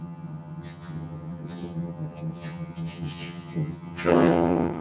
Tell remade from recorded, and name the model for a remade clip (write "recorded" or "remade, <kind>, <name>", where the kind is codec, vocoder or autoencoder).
remade, vocoder, HiFi-GAN